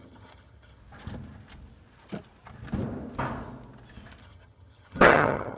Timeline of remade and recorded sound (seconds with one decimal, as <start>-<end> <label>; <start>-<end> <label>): 0.0-0.8 remade; 0.8-4.2 recorded; 4.2-5.6 remade